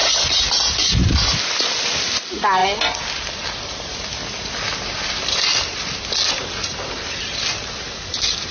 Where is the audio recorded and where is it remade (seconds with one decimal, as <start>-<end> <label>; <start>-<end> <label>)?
0.0-8.5 recorded